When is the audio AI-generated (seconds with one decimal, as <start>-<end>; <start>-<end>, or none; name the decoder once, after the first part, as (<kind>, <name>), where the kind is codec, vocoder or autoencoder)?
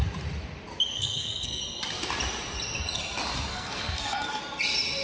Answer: 0.9-1.6 (codec, SNAC); 3.5-4.4